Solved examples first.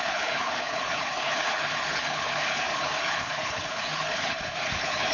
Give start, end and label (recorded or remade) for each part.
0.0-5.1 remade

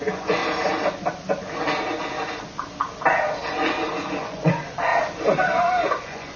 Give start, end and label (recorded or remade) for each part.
0.0-0.4 remade; 0.4-4.2 recorded; 4.2-4.9 remade; 4.9-6.0 recorded; 6.0-6.4 remade

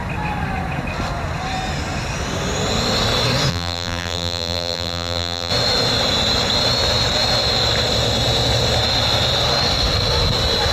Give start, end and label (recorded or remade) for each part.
0.0-3.5 recorded; 3.5-5.5 remade; 5.5-10.7 recorded

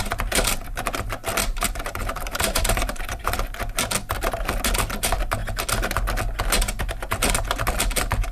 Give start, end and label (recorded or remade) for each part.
0.0-0.6 remade; 0.6-1.4 recorded; 1.4-3.2 remade; 3.2-8.3 recorded

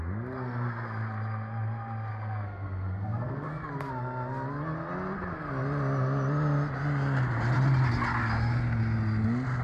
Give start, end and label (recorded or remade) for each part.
0.0-2.1 recorded; 2.1-3.5 remade; 3.5-9.6 recorded

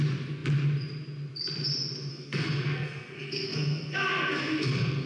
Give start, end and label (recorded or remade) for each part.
0.0-2.1 recorded; 2.1-5.1 remade